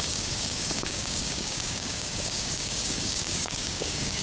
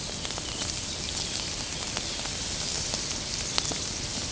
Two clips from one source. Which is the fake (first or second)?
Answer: first